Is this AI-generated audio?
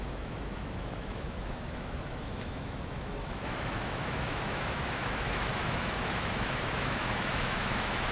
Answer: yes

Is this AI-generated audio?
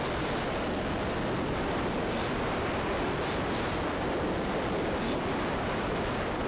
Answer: no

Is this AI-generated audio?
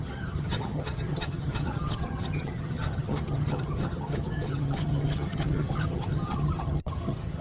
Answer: yes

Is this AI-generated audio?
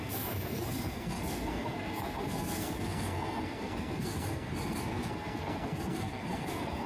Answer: yes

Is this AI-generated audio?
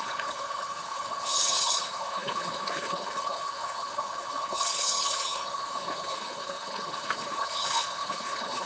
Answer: yes